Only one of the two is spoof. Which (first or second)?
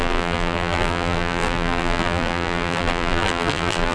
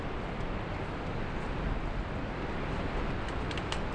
first